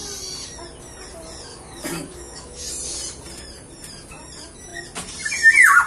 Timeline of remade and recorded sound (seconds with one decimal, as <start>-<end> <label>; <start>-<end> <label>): 0.0-1.5 recorded; 1.5-2.6 remade; 2.6-5.9 recorded